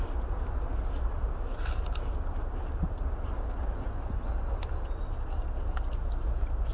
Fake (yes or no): no